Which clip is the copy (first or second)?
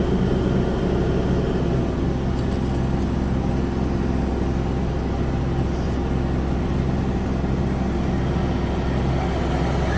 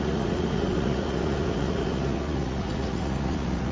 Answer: second